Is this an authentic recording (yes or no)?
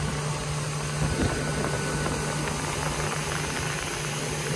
yes